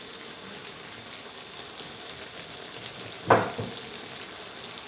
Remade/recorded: recorded